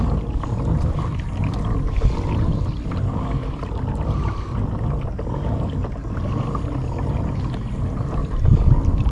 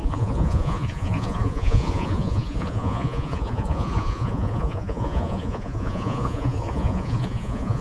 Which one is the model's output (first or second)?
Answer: second